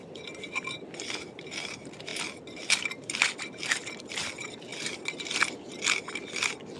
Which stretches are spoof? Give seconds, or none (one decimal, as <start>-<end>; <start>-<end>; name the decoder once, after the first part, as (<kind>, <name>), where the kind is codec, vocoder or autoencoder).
1.2-2.1 (vocoder, BigVGAN v2); 2.8-4.7; 5.9-6.8